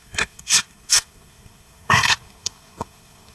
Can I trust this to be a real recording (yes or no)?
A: no